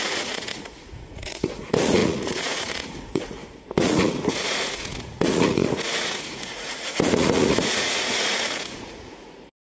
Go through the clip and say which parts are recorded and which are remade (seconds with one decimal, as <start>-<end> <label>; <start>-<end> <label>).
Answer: 0.0-9.6 remade